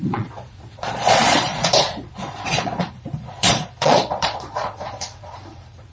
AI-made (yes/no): yes